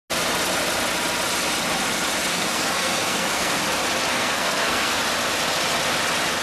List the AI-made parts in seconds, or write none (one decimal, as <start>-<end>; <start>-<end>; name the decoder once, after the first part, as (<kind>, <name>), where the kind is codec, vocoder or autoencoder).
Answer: 2.3-3.6 (codec, SNAC); 4.1-5.0